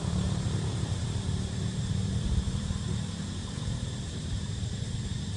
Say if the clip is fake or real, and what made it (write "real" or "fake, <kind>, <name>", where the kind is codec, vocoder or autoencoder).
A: fake, vocoder, BigVGAN v2